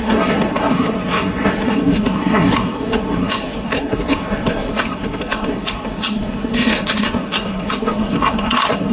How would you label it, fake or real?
fake